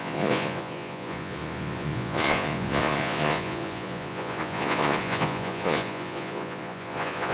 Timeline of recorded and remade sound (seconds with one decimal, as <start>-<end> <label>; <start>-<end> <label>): 0.0-7.3 remade